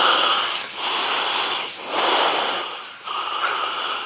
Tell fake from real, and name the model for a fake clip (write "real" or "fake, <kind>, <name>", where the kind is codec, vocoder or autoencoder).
real